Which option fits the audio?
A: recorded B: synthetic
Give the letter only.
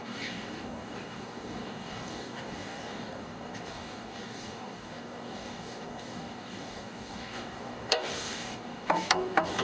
B